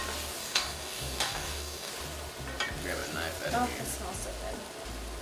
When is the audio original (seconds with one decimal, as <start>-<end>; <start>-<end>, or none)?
0.0-0.4; 1.9-5.2